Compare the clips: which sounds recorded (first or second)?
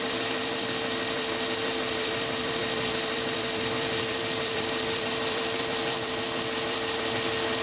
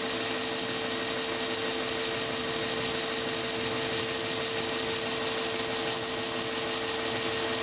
second